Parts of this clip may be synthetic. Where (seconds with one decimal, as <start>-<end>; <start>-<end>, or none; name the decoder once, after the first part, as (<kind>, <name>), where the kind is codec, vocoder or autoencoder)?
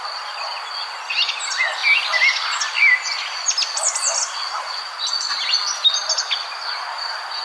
none